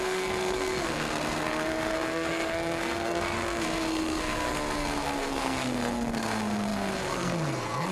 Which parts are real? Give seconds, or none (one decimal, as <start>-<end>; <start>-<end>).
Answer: none